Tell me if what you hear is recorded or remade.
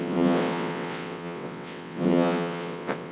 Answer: remade